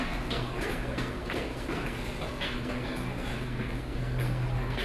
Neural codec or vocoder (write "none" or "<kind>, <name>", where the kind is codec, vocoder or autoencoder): codec, SNAC